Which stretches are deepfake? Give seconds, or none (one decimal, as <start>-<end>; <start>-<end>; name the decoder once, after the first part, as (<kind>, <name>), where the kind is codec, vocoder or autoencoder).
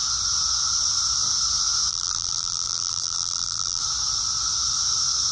1.9-3.8 (vocoder, BigVGAN v2)